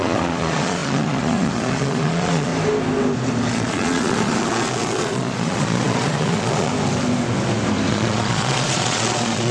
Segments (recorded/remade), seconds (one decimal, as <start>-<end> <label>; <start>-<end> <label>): 0.0-2.5 remade; 2.5-3.5 recorded; 3.5-6.7 remade; 6.7-7.9 recorded; 7.9-9.5 remade